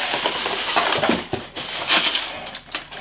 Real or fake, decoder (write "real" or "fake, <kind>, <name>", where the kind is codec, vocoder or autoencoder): real